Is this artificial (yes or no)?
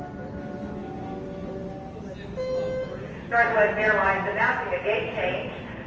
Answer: no